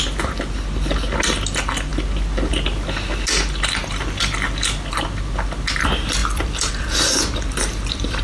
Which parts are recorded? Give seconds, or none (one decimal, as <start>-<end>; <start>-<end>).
0.0-6.2